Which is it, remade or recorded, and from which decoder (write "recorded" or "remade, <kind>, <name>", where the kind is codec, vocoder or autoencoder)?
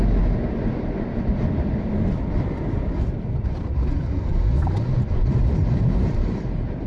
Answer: recorded